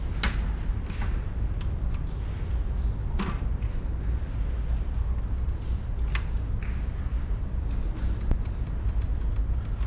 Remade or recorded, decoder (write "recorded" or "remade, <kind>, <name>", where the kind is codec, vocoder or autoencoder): recorded